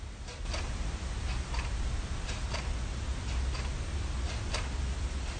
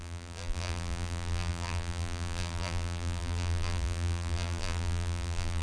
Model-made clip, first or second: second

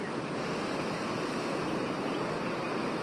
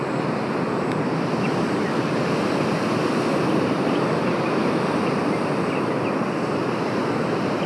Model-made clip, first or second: second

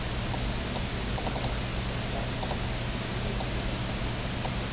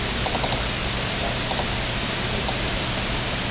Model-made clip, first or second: second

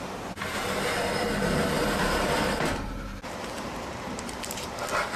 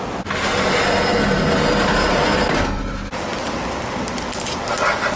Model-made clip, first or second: first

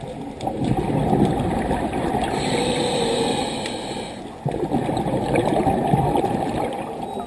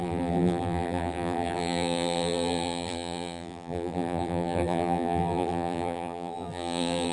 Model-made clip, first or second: second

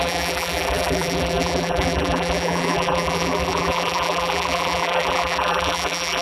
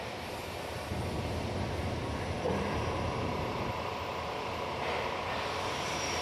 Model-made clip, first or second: first